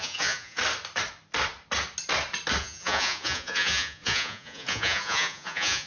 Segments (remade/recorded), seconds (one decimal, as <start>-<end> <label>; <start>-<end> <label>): 0.0-0.6 remade; 0.6-2.6 recorded; 2.6-5.9 remade